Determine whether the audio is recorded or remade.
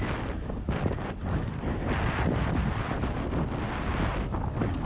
recorded